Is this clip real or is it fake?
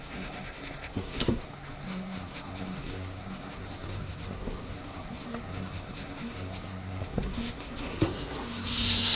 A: fake